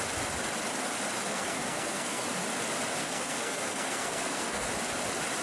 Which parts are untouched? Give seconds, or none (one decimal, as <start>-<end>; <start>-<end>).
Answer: 0.0-1.3; 2.2-3.0; 4.7-5.4